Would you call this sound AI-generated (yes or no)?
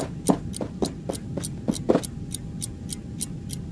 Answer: no